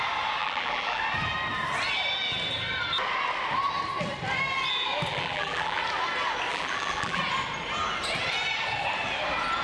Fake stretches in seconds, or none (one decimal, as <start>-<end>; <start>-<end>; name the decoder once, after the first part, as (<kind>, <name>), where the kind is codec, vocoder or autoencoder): 0.4-1.0 (vocoder, BigVGAN v2); 5.1-5.8; 6.5-7.2